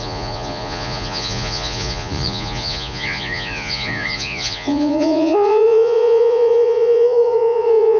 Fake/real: fake